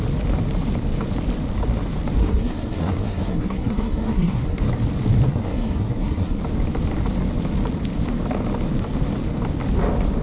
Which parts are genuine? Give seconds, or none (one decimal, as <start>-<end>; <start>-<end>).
0.0-2.2; 4.7-5.3; 6.4-10.2